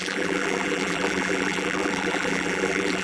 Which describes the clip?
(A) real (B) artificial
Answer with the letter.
B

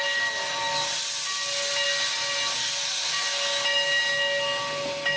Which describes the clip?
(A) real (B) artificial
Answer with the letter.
A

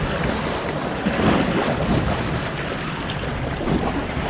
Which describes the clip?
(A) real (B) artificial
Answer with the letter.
A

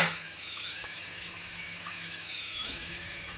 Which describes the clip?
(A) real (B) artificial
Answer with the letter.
B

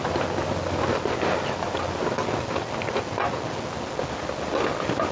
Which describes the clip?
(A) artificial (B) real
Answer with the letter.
B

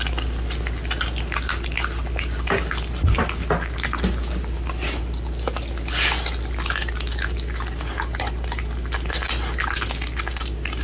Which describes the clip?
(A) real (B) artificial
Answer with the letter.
A